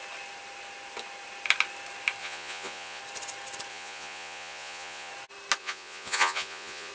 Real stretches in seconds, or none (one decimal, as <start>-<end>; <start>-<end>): 0.0-2.2; 3.0-3.7; 5.1-5.6

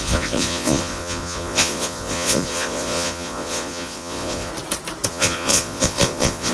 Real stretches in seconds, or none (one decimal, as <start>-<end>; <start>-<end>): 4.5-5.1

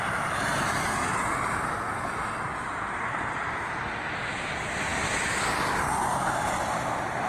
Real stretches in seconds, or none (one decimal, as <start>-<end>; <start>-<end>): 0.0-7.3

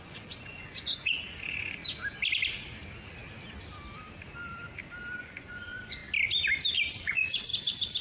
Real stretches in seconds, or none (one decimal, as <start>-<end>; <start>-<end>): 1.8-5.2; 6.0-6.9; 7.5-8.0

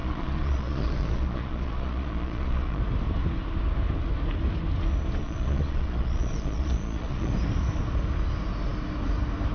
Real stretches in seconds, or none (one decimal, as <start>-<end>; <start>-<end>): 2.8-5.2; 7.3-9.5